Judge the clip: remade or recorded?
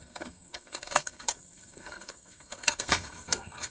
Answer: remade